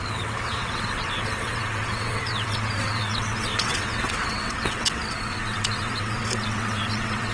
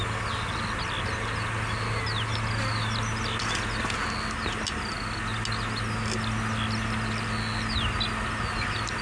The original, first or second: second